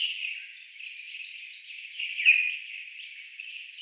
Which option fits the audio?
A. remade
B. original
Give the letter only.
B